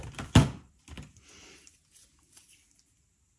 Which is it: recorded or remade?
recorded